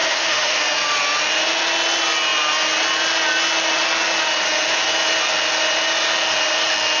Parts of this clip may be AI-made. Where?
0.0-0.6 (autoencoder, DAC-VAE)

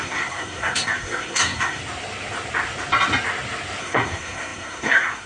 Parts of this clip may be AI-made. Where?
0.0-1.8 (codec, SNAC); 3.8-5.3

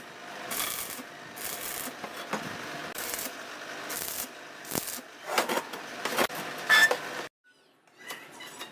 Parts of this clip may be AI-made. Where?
none